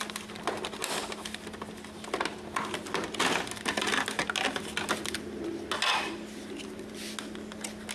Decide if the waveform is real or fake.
real